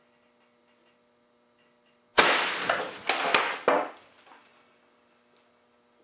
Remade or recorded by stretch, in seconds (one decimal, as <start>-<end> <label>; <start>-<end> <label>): 0.0-6.0 recorded